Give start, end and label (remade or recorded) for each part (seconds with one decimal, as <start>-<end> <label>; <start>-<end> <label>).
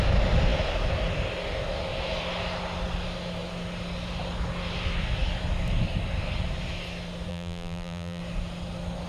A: 0.0-7.3 recorded; 7.3-8.2 remade; 8.2-9.1 recorded